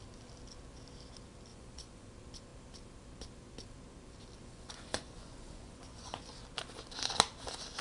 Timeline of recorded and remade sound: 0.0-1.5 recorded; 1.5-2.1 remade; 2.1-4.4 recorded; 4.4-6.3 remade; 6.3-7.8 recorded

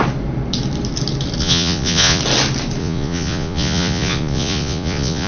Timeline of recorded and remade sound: 0.0-1.4 recorded; 1.4-2.2 remade; 2.2-2.8 recorded; 2.8-5.3 remade

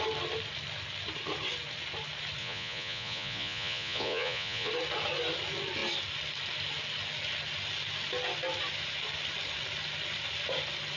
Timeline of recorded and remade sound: 0.0-2.4 recorded; 2.4-4.7 remade; 4.7-11.0 recorded

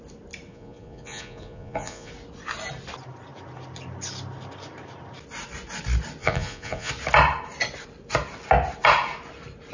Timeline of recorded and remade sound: 0.0-0.5 recorded; 0.5-2.1 remade; 2.1-6.2 recorded; 6.2-6.9 remade; 6.9-9.7 recorded

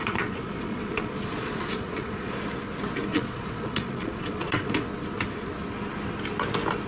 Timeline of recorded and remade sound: 0.0-2.3 remade; 2.3-3.1 recorded; 3.1-4.7 remade; 4.7-6.9 recorded

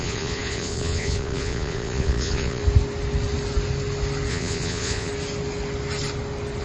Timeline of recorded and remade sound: 0.0-2.6 remade; 2.6-4.3 recorded; 4.3-5.1 remade; 5.1-6.6 recorded

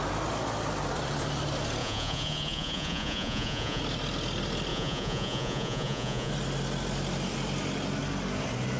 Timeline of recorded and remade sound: 0.0-1.8 recorded; 1.8-3.8 remade; 3.8-4.7 recorded; 4.7-6.3 remade; 6.3-8.8 recorded

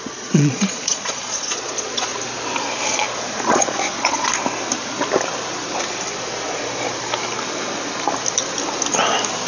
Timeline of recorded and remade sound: 0.0-2.1 remade; 2.1-3.4 recorded; 3.4-4.3 remade; 4.3-9.5 recorded